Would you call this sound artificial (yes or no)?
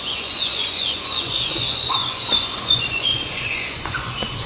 yes